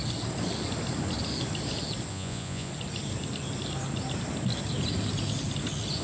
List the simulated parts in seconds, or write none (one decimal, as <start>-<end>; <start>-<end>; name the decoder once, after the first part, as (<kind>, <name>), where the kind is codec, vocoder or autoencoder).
2.1-2.7 (vocoder, Vocos)